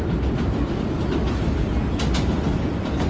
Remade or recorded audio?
remade